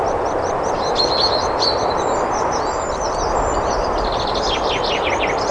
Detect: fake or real real